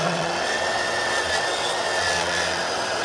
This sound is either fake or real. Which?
fake